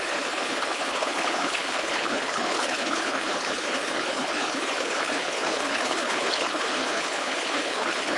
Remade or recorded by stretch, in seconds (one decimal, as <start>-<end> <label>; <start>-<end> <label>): 0.0-8.2 remade